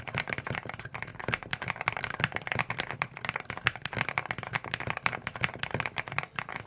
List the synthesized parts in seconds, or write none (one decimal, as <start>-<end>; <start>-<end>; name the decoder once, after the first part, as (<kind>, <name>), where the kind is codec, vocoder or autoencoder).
none

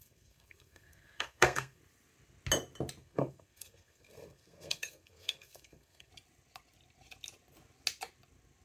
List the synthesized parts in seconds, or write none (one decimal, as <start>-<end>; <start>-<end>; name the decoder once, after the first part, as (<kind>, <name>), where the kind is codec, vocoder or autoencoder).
0.0-1.8 (codec, SNAC); 3.0-6.1

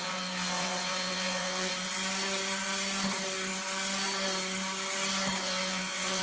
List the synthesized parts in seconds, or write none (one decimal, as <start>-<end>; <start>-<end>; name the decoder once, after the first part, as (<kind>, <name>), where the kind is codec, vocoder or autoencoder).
0.0-1.7 (vocoder, WaveNeXt); 5.4-6.2